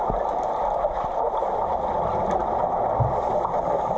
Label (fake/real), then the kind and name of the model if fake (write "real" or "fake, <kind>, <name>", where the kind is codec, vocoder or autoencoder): real